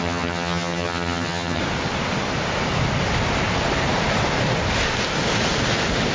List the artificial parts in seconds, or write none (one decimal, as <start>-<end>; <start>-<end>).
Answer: 0.0-1.6